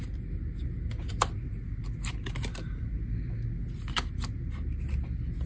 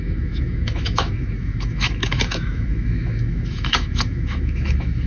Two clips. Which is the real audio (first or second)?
first